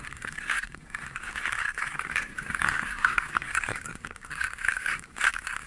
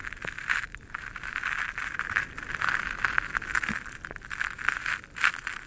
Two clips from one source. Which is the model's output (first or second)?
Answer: first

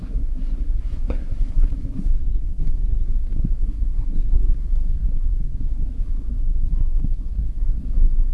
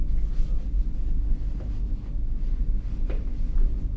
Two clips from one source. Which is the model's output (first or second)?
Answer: first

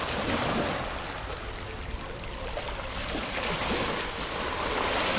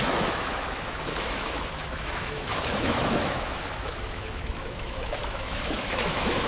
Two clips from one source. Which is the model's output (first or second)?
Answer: second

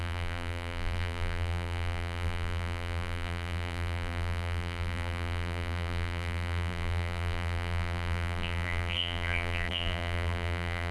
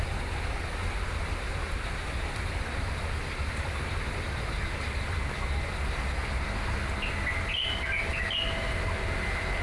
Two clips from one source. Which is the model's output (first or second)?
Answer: first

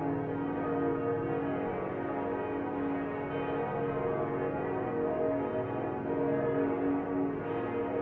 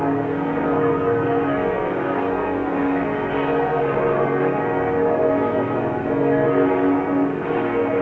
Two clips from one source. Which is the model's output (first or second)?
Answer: second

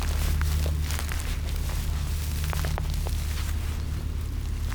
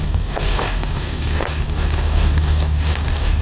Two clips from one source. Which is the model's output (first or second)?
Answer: second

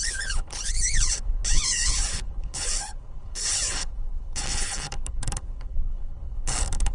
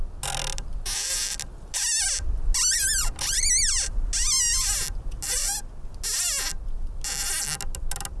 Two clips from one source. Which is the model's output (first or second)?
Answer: first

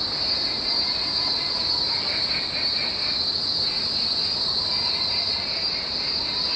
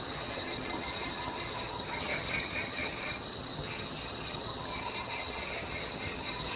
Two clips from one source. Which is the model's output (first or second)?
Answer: second